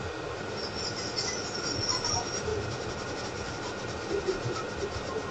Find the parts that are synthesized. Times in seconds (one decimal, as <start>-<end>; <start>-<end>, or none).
none

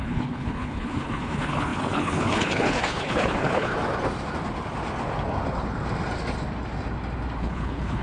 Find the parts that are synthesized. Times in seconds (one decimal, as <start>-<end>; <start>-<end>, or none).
0.0-3.7; 7.4-8.0

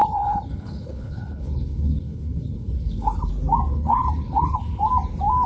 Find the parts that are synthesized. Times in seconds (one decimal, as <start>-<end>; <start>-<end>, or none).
0.0-3.3; 3.7-4.8

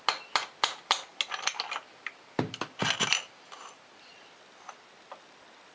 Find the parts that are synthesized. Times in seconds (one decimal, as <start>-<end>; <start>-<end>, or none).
none

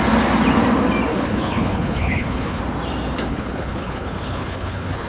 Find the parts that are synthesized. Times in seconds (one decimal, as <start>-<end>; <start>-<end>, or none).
1.1-2.6; 3.3-5.1

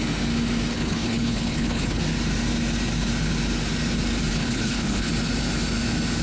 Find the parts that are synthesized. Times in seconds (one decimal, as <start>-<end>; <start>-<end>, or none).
0.7-2.0; 4.3-5.1